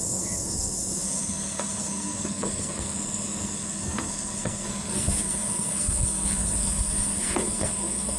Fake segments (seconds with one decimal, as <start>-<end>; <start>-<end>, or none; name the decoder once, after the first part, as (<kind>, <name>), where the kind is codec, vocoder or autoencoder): 0.0-8.2 (codec, SNAC)